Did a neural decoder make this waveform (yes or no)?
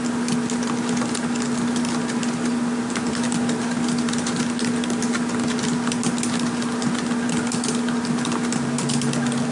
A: no